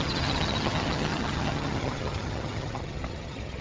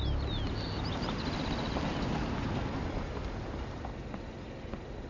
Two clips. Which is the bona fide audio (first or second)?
second